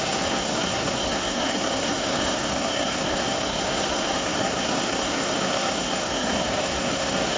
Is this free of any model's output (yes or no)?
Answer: no